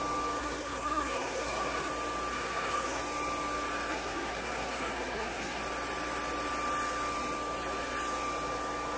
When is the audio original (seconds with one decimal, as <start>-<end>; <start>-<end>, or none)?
0.0-0.4; 1.9-2.3; 3.0-3.9; 5.6-9.0